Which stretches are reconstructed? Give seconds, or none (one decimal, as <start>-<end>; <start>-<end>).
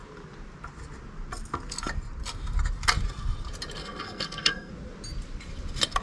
3.8-4.7